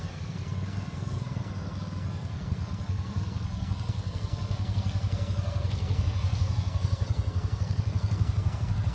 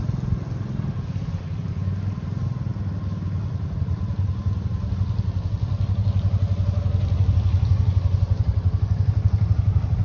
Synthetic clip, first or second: first